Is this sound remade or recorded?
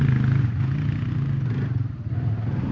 recorded